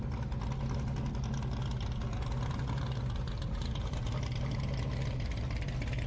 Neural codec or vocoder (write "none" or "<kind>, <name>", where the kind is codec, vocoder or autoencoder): none